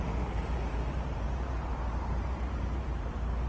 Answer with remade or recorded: remade